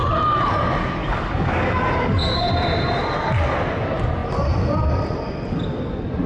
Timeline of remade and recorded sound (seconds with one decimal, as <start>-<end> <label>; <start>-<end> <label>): 0.0-1.0 recorded; 1.0-2.5 remade; 2.5-6.3 recorded